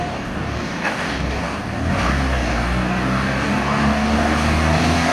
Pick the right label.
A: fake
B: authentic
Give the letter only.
A